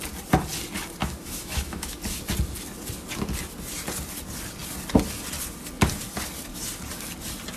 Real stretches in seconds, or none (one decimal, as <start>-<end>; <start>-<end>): 0.0-1.0; 2.0-7.6

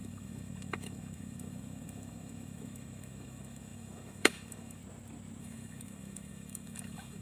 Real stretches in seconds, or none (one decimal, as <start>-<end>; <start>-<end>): 4.8-5.4